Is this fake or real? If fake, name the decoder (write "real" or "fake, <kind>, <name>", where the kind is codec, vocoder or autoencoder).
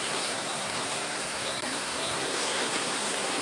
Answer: fake, codec, SNAC